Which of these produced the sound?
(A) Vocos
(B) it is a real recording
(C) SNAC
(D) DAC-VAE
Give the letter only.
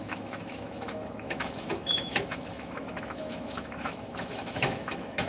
D